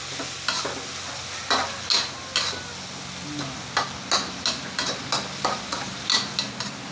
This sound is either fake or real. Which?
real